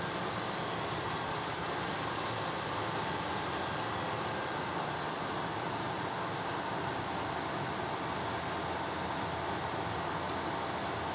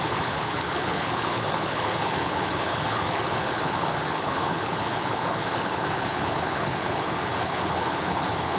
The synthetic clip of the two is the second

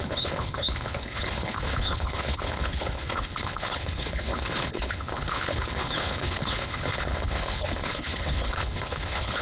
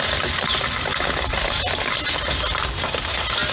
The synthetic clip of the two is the first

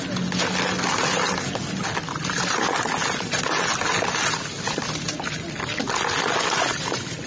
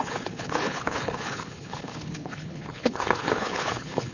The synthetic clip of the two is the second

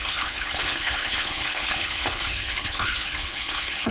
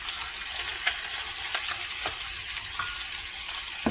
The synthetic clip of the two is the first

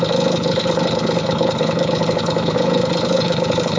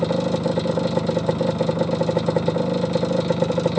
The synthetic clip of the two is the first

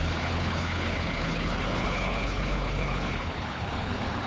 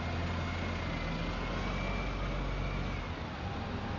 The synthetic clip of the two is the first